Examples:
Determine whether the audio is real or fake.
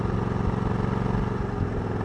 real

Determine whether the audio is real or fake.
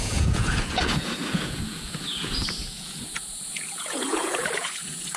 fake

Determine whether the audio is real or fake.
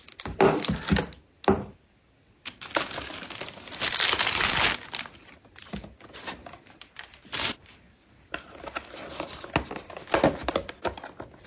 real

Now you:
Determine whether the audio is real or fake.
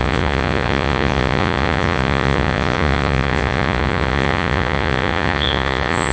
fake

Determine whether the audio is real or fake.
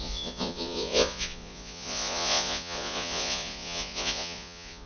fake